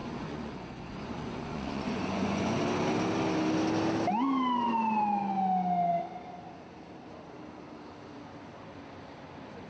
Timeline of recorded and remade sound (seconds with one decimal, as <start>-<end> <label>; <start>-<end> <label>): 0.0-2.6 remade; 2.6-9.7 recorded